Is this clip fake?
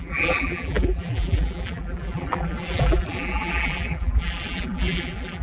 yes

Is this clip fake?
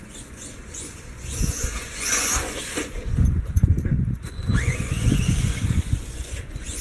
yes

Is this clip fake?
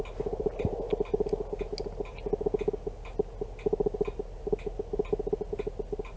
no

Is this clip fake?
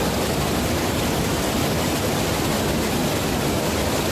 no